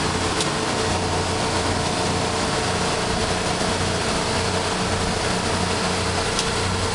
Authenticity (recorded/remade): recorded